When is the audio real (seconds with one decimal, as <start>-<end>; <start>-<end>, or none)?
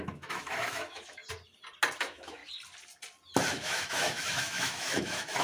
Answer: 1.2-2.0; 2.4-3.5